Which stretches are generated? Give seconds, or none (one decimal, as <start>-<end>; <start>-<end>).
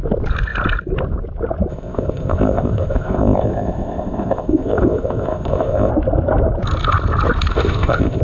1.7-5.9; 7.5-8.2